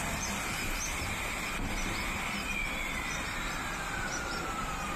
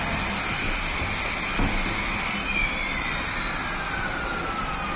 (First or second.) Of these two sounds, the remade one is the first